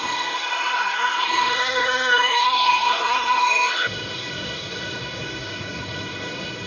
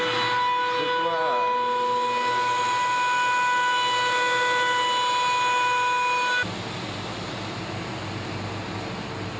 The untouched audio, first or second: second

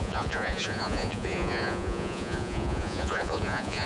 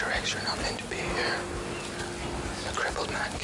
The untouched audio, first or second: second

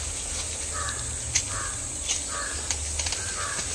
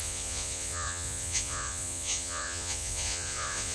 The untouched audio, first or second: first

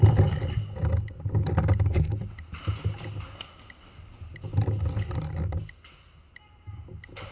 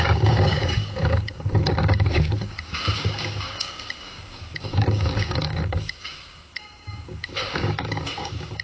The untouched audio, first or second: first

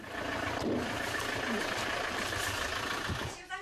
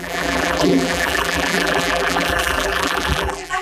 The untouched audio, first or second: first